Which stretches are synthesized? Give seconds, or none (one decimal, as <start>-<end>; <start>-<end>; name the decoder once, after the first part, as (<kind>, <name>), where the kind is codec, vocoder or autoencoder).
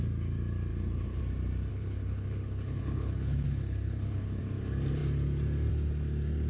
0.7-1.2 (codec, HILCodec); 1.7-4.4